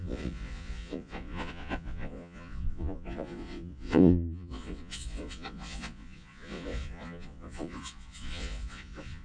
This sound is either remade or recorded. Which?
remade